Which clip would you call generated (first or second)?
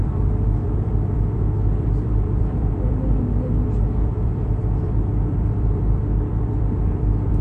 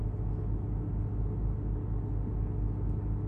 first